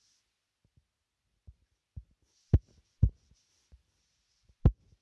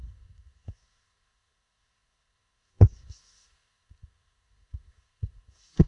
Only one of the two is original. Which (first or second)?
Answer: first